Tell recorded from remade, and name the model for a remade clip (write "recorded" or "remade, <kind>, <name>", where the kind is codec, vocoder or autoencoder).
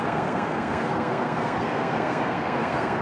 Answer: remade, codec, SNAC